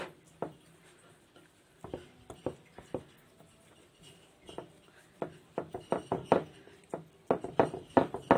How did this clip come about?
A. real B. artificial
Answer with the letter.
A